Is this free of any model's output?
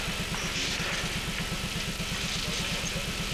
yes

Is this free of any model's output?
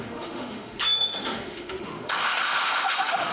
no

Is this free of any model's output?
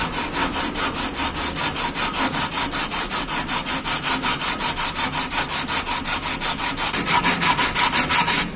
yes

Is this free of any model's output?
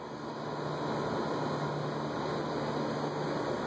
yes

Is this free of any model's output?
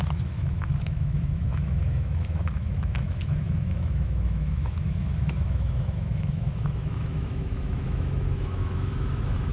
no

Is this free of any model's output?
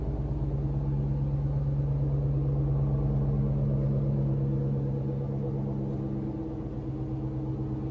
yes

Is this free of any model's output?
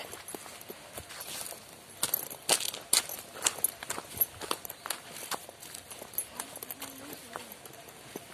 yes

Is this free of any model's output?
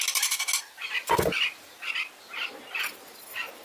yes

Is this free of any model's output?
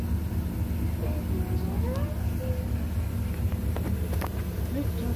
yes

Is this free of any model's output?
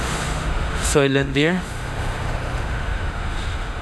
no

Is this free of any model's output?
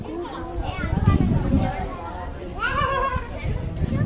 yes